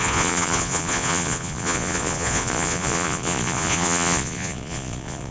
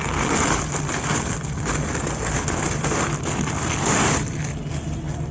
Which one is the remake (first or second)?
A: first